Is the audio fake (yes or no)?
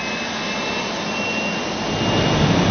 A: no